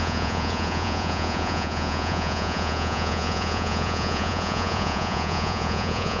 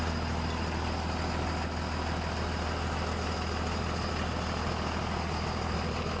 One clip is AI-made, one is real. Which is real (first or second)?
second